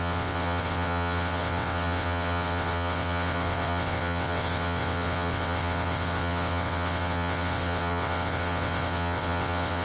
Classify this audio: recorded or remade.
remade